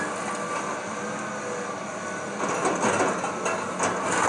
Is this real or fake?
real